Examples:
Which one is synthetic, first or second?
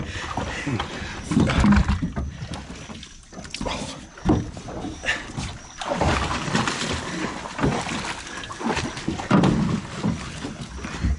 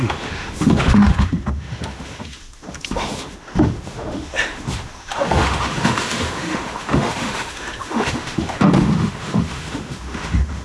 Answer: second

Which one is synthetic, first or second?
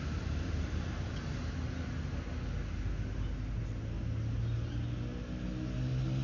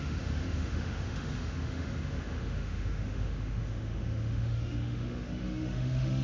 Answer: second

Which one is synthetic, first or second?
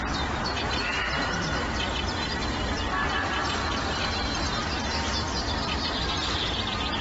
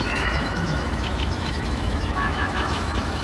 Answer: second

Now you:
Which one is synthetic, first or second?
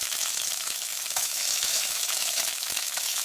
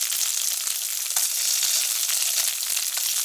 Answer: first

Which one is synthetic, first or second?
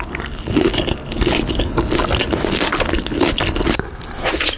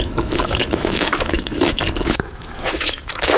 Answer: second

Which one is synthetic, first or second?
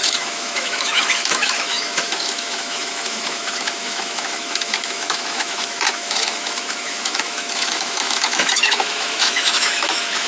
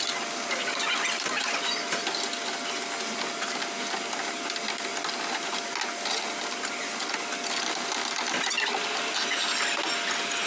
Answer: first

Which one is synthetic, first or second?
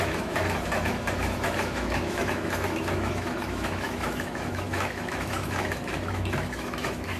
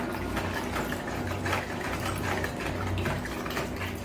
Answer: first